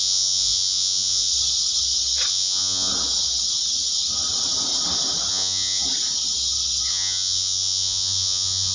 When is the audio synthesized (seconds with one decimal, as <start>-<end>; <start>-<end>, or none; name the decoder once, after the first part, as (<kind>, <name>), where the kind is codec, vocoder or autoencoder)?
0.0-1.3 (vocoder, Vocos); 2.3-2.9; 5.3-5.8; 6.9-8.7